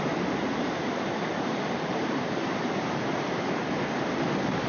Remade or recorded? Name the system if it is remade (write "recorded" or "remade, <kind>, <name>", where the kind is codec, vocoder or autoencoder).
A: remade, vocoder, BigVGAN v2